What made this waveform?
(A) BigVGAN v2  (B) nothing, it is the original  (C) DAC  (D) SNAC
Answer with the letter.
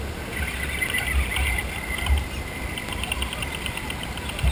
B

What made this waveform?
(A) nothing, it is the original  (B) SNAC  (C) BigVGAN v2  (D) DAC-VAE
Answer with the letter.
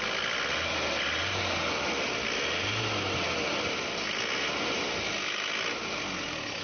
A